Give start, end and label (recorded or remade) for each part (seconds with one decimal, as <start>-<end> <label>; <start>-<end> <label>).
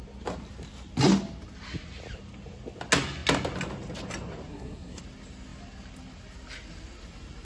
0.0-4.5 recorded; 4.5-5.0 remade; 5.0-7.4 recorded